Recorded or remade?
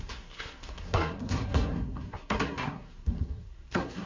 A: remade